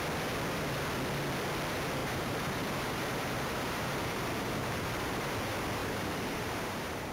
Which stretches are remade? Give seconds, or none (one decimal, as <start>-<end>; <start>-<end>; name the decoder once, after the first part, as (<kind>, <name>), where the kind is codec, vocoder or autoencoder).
2.0-5.3 (vocoder, BigVGAN v2); 5.8-7.1